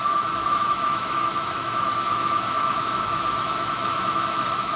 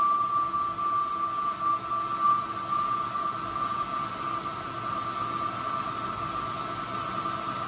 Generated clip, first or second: first